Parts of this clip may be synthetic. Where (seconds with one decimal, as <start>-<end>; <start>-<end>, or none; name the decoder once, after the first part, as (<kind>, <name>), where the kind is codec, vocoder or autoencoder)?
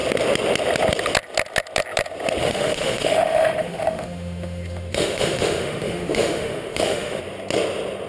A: 2.4-7.2 (autoencoder, DAC-VAE)